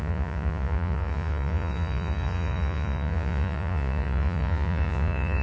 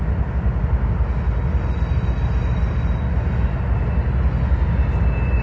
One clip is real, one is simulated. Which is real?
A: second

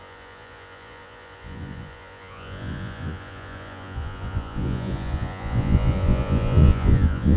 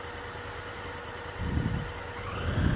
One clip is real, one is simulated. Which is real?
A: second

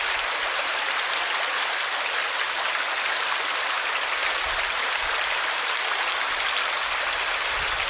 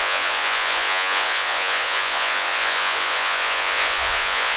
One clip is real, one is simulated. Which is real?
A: first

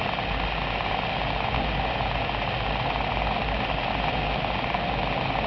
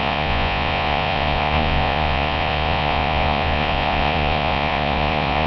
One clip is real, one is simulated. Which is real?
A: first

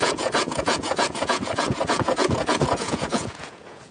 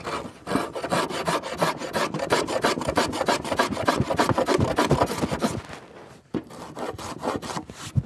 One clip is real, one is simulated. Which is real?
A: second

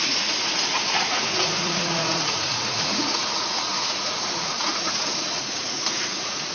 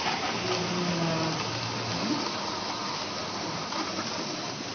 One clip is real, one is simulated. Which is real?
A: second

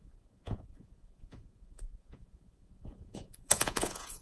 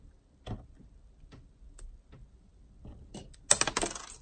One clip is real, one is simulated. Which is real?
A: second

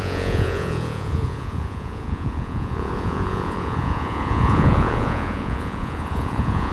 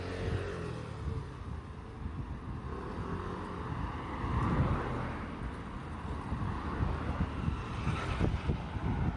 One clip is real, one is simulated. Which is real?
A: second